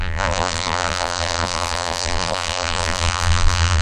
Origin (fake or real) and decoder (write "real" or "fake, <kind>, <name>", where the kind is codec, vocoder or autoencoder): fake, vocoder, BigVGAN v2